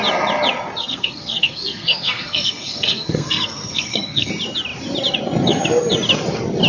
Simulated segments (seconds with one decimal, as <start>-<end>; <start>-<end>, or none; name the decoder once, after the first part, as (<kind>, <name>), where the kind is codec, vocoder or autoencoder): 0.8-4.3 (codec, SNAC)